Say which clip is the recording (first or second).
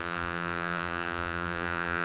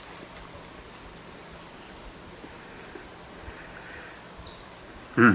second